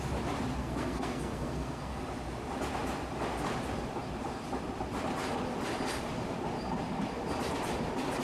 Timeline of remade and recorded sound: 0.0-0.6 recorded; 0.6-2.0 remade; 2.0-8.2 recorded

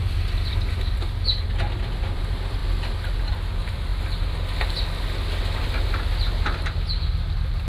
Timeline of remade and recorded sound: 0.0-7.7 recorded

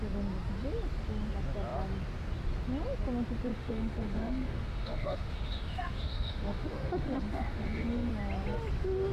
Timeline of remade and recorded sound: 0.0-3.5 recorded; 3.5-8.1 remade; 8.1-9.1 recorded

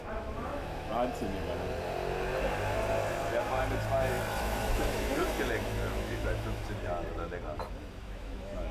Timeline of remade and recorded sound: 0.0-0.9 remade; 0.9-4.4 recorded; 4.4-5.1 remade; 5.1-5.6 recorded; 5.6-6.6 remade; 6.6-8.0 recorded; 8.0-8.7 remade